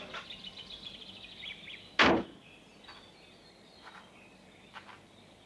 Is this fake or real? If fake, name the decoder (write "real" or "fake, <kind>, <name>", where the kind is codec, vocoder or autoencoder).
real